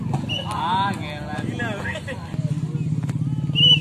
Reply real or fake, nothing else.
real